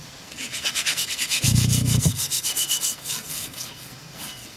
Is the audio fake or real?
fake